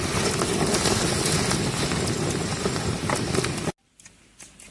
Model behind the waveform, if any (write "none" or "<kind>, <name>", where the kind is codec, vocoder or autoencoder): none